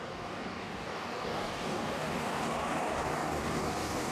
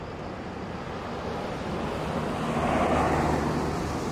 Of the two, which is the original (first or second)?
second